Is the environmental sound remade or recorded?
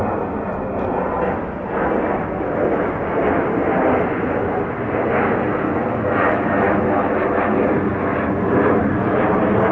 recorded